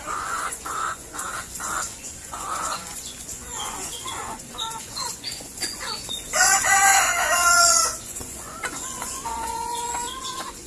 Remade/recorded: remade